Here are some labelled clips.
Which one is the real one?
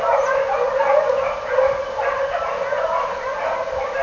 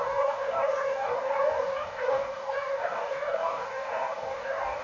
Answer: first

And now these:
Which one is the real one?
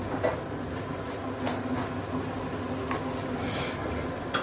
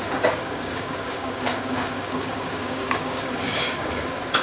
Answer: first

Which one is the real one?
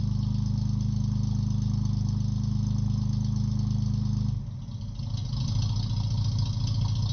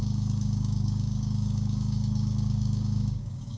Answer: first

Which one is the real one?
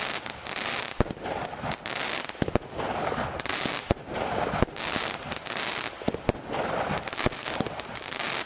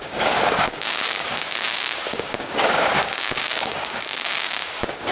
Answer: first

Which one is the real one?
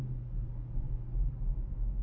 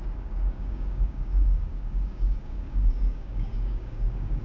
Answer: first